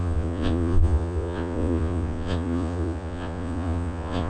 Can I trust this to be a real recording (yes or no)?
no